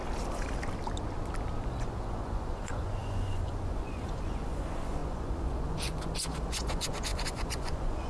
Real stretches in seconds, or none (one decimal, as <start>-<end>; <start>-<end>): 0.0-1.6